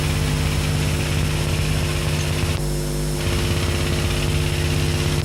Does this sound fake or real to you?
real